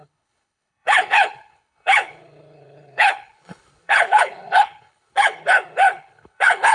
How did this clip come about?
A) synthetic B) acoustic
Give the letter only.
A